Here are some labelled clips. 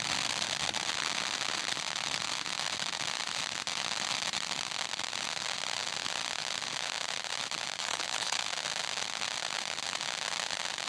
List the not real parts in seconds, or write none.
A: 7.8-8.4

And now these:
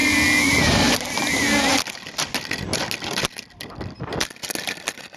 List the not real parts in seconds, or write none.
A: none

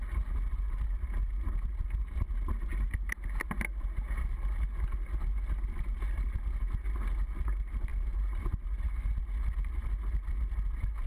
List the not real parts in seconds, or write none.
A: none

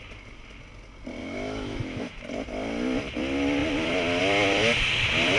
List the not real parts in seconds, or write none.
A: 1.2-2.2